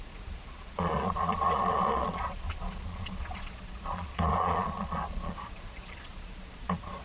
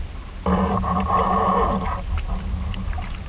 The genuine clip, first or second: second